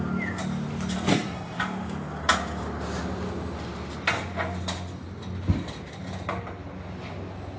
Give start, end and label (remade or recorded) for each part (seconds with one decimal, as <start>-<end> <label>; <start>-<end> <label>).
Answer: 0.0-1.1 recorded; 1.1-1.6 remade; 1.6-7.6 recorded